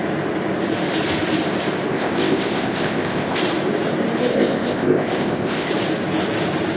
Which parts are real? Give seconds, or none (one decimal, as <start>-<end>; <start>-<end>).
0.0-1.9; 3.4-4.3; 5.7-6.8